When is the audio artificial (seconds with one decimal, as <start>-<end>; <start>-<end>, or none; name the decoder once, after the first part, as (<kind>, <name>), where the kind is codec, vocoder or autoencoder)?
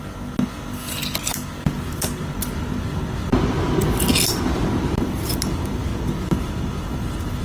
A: none